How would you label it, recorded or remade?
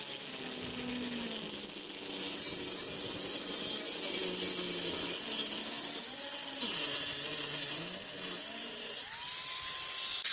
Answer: recorded